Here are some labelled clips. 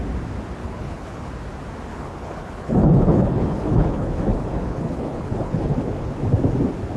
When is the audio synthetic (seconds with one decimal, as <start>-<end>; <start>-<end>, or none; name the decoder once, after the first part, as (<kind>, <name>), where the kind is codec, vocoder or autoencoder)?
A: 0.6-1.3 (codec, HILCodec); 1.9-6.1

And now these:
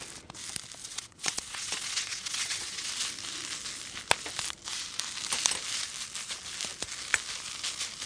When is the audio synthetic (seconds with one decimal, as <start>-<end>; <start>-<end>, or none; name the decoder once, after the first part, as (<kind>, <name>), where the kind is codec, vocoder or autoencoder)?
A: 0.8-2.9 (vocoder, WaveNeXt)

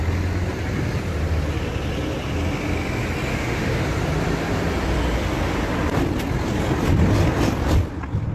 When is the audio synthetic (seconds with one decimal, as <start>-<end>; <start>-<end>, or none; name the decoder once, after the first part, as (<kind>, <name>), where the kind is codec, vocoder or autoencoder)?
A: 3.3-3.8 (autoencoder, DAC-VAE)

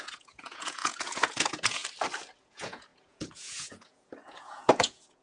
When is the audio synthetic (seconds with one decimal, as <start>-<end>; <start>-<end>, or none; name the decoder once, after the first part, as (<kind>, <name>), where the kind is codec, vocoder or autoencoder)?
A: 0.0-1.8 (vocoder, Vocos); 2.4-5.2